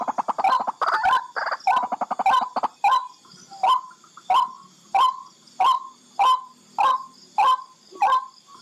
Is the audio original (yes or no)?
yes